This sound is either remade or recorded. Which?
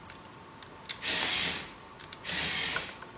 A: recorded